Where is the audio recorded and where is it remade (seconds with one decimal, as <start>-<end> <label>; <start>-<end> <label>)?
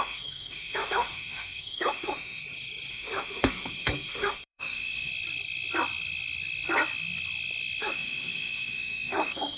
0.0-2.4 remade; 2.4-2.9 recorded; 2.9-5.1 remade; 5.1-7.8 recorded; 7.8-9.6 remade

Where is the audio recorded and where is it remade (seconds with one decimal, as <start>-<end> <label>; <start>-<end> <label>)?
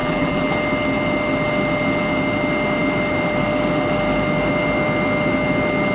0.0-0.5 remade; 0.5-5.9 recorded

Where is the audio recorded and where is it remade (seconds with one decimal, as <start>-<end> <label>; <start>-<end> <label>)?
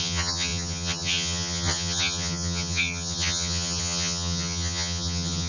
0.0-5.5 remade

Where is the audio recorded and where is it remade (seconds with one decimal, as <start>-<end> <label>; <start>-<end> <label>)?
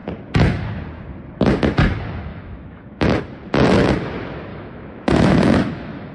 0.0-2.3 recorded; 2.3-3.2 remade; 3.2-4.5 recorded; 4.5-6.1 remade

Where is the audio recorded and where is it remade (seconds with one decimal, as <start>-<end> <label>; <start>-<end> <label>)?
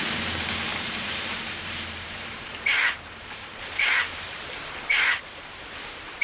0.0-6.2 remade